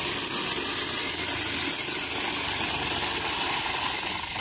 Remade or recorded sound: recorded